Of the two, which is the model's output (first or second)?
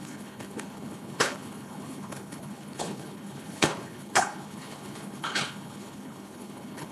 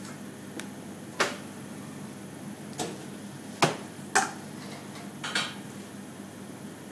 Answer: first